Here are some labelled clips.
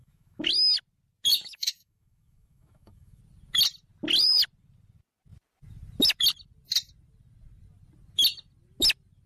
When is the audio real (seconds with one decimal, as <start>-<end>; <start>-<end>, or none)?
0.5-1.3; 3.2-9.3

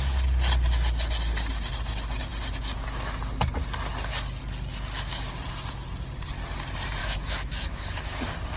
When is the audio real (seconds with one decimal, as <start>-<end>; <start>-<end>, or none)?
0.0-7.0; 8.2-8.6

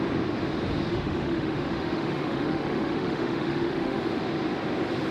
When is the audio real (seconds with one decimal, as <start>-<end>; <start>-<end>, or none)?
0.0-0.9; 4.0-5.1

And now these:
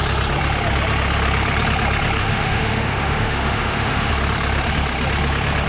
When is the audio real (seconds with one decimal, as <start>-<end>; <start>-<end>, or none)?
0.0-2.2; 4.1-5.7